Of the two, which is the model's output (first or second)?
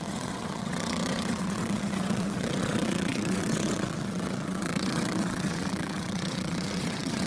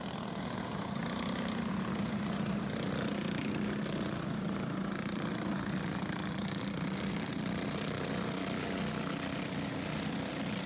first